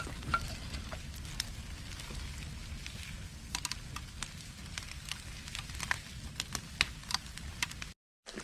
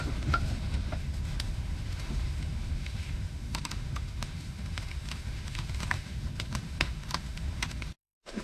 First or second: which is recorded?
first